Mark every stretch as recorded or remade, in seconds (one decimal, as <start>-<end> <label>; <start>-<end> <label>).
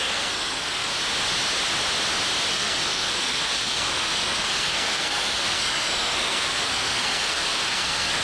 0.0-0.9 remade; 0.9-2.5 recorded; 2.5-8.2 remade